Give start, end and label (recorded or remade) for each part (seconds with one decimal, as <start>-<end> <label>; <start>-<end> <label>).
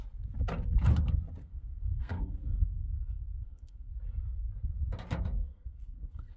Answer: 0.0-1.4 recorded; 1.4-3.9 remade; 3.9-5.5 recorded; 5.5-6.4 remade